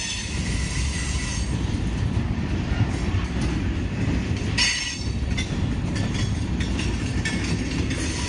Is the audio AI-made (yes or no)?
no